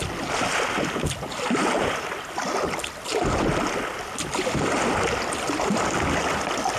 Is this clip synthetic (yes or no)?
no